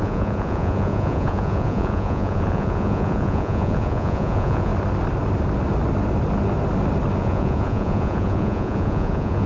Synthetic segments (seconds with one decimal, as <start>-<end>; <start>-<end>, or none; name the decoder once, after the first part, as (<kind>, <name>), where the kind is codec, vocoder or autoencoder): 0.0-4.7 (vocoder, Vocos); 7.2-9.5